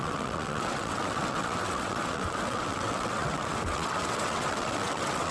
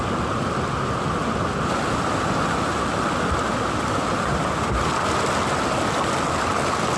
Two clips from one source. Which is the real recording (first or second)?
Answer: second